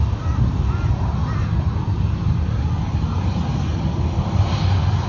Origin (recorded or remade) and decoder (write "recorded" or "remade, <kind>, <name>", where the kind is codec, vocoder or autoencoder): recorded